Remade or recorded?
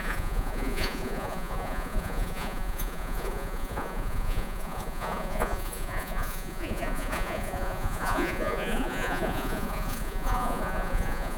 remade